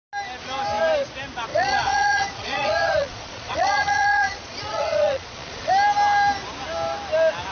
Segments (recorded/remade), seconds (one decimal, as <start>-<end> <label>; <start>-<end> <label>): 0.0-1.5 recorded; 1.5-5.7 remade; 5.7-7.5 recorded